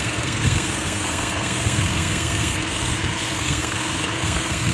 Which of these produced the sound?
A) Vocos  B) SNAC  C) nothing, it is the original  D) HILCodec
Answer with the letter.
B